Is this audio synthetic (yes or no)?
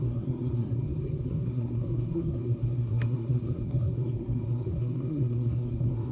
yes